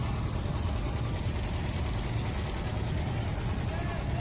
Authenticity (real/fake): real